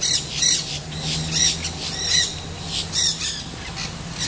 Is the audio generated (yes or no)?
no